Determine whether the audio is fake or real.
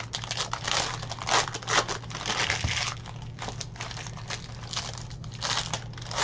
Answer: real